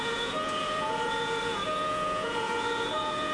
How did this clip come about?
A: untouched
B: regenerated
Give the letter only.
B